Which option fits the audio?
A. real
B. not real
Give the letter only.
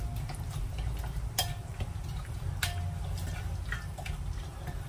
A